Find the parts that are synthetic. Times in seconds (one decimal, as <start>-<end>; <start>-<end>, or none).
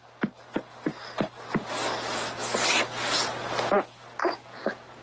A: none